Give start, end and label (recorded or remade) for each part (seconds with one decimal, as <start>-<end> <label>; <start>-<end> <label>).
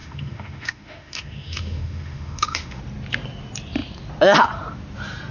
0.0-2.8 remade; 2.8-5.3 recorded